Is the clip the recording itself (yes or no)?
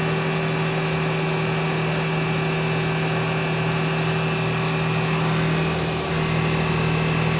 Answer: yes